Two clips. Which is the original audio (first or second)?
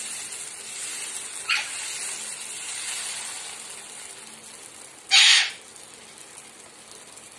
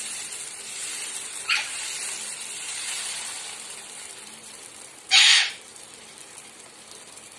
first